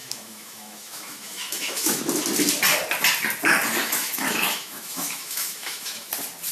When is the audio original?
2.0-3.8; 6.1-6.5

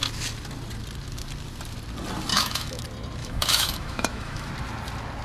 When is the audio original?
0.0-2.3; 2.8-3.2; 4.5-5.2

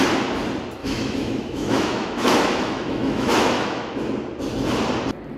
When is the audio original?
0.0-0.8; 4.0-5.4

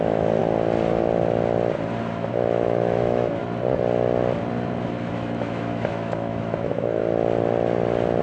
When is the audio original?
0.4-2.3; 3.4-5.1; 7.0-8.2